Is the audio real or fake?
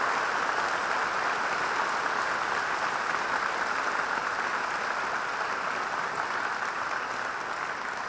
real